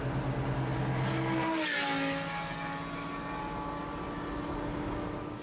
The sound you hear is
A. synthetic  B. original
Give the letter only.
B